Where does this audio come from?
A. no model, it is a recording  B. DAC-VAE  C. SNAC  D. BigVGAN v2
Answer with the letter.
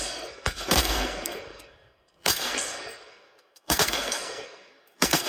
C